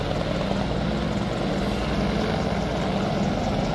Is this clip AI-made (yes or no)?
no